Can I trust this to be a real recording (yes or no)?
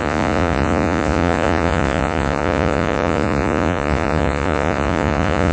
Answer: no